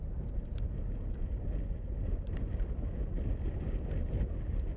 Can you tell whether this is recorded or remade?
recorded